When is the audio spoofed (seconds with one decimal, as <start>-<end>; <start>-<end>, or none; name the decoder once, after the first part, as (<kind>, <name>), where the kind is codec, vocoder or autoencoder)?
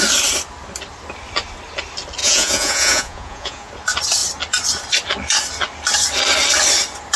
2.2-3.7 (vocoder, Vocos)